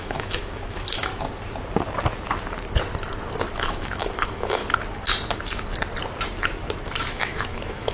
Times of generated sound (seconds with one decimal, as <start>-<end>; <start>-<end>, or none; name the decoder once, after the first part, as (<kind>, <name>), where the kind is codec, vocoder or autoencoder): 0.0-1.1 (autoencoder, DAC-VAE); 3.6-4.6; 7.0-7.9